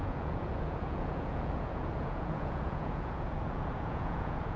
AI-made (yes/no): yes